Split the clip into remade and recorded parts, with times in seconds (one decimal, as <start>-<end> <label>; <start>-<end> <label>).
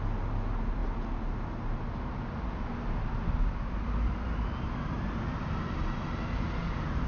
0.0-7.1 recorded